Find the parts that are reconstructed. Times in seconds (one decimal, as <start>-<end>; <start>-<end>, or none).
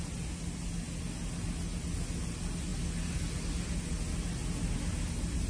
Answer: none